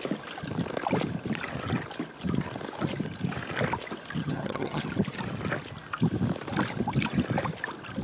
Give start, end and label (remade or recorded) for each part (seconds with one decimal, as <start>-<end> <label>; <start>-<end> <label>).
0.0-4.2 recorded; 4.2-4.8 remade; 4.8-8.0 recorded